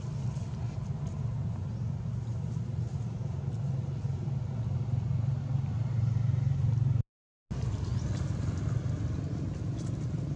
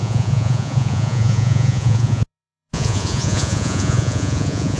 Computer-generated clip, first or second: second